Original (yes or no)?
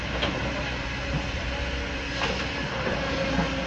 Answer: yes